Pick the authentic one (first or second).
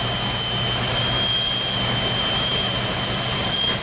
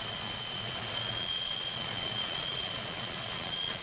first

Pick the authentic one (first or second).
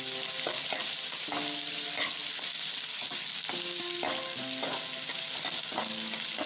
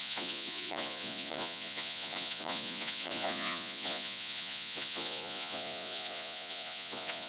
first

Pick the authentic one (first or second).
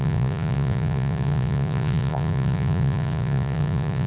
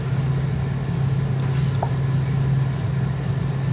second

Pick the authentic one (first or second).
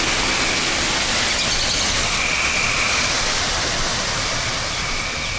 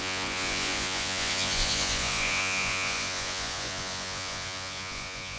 first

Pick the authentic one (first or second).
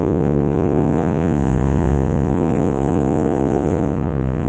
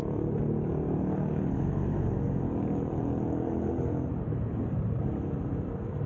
second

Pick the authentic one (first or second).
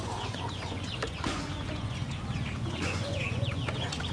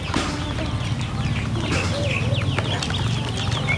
second